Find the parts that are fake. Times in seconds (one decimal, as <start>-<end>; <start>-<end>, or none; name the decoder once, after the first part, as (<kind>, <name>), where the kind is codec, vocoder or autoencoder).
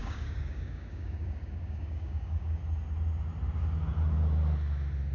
0.0-2.6 (codec, DAC)